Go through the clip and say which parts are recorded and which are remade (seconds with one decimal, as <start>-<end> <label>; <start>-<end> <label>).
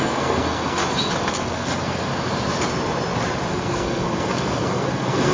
0.0-0.8 remade; 0.8-1.3 recorded; 1.3-2.1 remade; 2.1-3.5 recorded; 3.5-5.3 remade